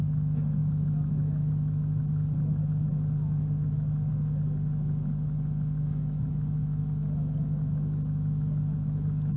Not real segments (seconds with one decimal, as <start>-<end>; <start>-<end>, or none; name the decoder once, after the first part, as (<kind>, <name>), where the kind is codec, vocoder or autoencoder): none